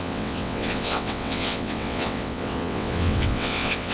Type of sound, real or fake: fake